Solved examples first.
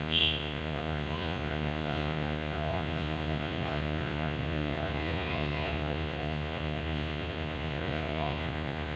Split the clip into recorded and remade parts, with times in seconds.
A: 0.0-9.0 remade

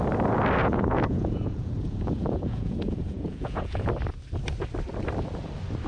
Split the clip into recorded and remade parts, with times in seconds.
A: 0.0-0.6 recorded; 0.6-3.9 remade; 3.9-5.9 recorded

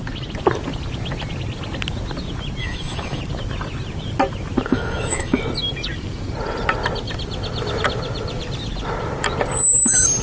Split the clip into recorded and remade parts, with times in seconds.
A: 0.0-2.6 recorded; 2.6-3.2 remade; 3.2-4.7 recorded; 4.7-5.4 remade; 5.4-10.2 recorded